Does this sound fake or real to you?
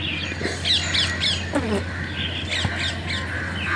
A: real